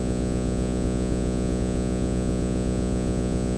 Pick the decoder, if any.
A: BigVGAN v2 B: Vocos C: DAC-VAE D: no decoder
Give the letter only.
B